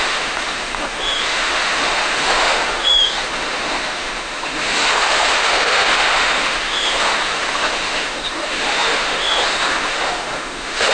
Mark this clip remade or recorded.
remade